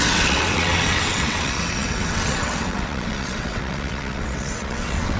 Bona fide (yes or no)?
no